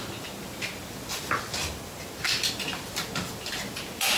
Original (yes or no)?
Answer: yes